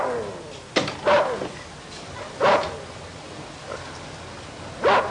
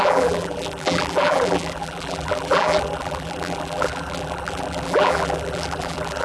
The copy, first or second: second